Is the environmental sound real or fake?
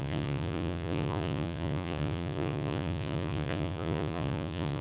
fake